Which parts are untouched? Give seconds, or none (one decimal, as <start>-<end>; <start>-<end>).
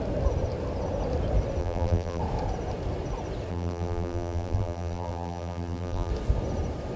0.0-1.6; 2.2-3.5; 6.1-7.0